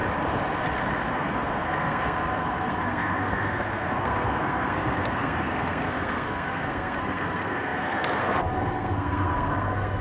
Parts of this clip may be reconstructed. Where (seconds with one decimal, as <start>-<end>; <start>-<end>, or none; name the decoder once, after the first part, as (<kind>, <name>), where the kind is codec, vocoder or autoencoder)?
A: 1.1-10.0 (codec, SNAC)